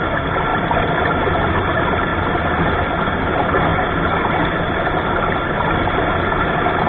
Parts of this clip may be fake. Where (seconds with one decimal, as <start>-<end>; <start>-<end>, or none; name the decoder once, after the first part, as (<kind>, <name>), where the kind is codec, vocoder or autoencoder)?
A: none

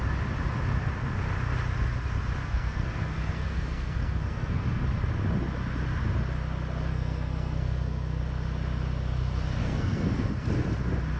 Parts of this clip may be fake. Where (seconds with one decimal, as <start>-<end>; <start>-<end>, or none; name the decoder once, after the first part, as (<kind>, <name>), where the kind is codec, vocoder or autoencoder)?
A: 2.4-4.8 (codec, SNAC); 6.9-8.2; 9.6-10.5